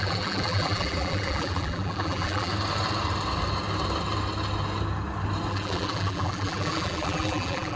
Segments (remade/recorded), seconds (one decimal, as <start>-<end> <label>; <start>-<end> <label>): 0.0-2.5 remade; 2.5-5.5 recorded; 5.5-7.8 remade